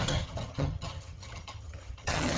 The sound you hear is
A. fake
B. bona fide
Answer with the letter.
A